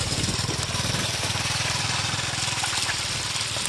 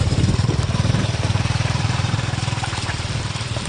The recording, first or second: first